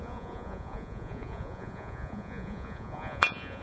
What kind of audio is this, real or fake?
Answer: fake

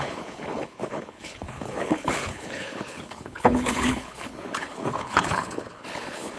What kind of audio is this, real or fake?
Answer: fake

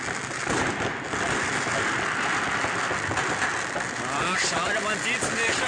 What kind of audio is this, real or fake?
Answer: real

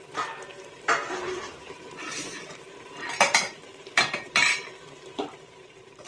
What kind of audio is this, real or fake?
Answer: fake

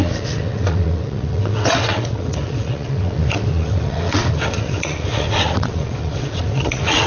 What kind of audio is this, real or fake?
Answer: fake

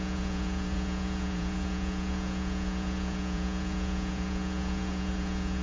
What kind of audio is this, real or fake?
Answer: fake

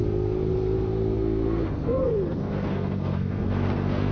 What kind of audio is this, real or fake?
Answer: fake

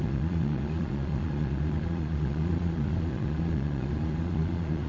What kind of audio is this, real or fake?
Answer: fake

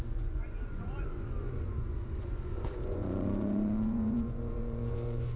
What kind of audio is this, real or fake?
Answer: fake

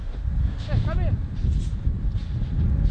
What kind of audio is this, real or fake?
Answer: real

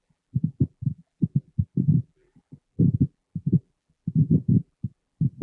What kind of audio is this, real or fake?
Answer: fake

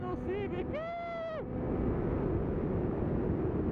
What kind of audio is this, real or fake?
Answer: real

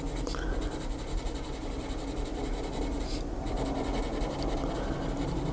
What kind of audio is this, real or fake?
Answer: real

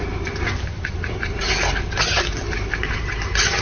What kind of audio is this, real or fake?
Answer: real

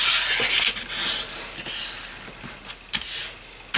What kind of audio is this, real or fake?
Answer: real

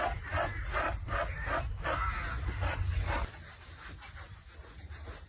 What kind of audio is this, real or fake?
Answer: real